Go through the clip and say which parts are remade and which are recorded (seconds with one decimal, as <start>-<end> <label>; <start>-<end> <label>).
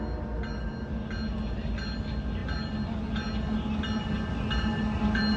0.0-5.4 recorded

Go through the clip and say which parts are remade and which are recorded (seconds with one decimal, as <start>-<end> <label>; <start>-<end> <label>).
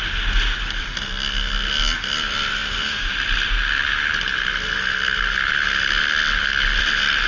0.0-7.3 recorded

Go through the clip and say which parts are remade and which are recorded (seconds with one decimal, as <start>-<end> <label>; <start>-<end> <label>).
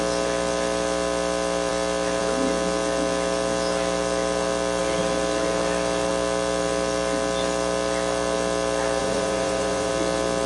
0.0-9.0 recorded; 9.0-9.9 remade; 9.9-10.5 recorded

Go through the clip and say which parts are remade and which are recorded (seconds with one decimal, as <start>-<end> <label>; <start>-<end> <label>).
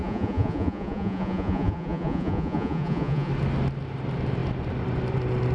0.0-3.3 remade; 3.3-5.5 recorded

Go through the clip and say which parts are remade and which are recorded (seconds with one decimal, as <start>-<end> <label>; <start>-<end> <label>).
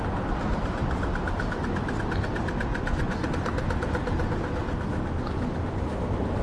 0.0-2.7 recorded; 2.7-3.3 remade; 3.3-6.4 recorded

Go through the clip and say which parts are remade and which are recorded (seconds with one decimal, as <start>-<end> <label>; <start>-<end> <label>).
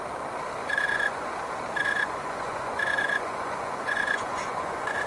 0.0-0.6 recorded; 0.6-1.3 remade; 1.3-1.8 recorded; 1.8-5.1 remade